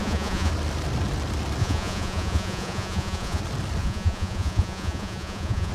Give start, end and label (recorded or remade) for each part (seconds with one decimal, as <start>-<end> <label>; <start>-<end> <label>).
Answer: 0.0-0.5 remade; 0.5-1.6 recorded; 1.6-3.4 remade; 3.4-3.8 recorded; 3.8-5.7 remade